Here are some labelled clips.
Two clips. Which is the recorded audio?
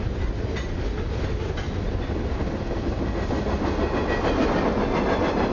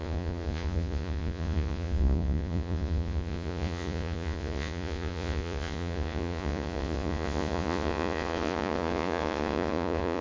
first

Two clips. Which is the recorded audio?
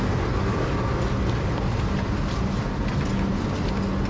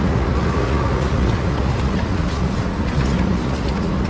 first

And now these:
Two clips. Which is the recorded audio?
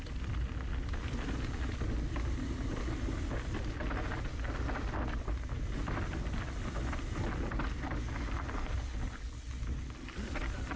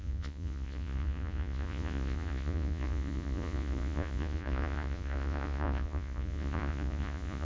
first